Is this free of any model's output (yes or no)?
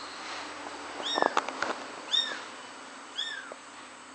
yes